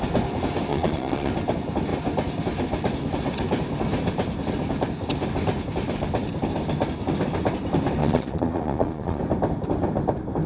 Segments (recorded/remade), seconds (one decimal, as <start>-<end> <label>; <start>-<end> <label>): 0.0-0.7 recorded; 0.7-1.3 remade; 1.3-8.0 recorded; 8.0-9.2 remade; 9.2-10.5 recorded